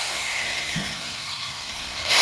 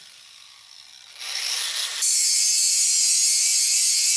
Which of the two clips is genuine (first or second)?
second